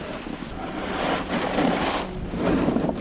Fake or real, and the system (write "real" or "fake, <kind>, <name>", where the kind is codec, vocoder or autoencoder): real